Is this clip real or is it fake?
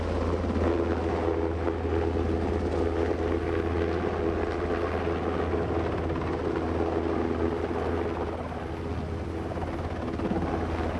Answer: real